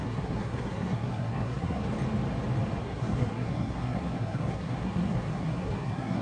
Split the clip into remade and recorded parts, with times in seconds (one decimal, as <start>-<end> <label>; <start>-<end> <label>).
0.0-1.8 remade; 1.8-2.8 recorded; 2.8-6.2 remade